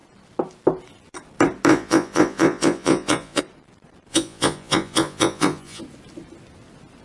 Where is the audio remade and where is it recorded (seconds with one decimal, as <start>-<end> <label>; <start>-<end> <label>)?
0.0-1.7 recorded; 1.7-3.4 remade; 3.4-4.1 recorded; 4.1-5.8 remade; 5.8-7.0 recorded